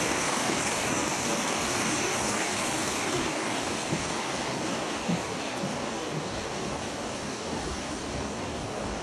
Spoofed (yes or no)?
yes